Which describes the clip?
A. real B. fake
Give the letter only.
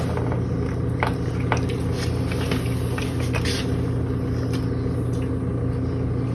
A